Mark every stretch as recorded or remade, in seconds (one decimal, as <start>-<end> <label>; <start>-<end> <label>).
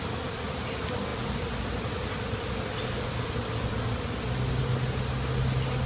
0.0-5.9 recorded